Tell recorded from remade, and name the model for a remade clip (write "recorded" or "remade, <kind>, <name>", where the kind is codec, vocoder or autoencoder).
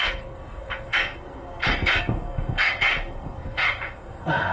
remade, codec, SNAC